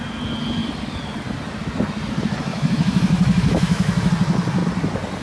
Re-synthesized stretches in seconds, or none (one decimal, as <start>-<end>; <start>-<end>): 2.5-4.1